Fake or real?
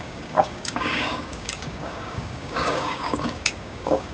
fake